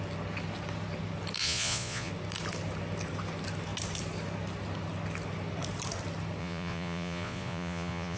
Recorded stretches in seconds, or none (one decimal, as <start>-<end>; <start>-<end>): 0.0-1.4; 2.1-6.4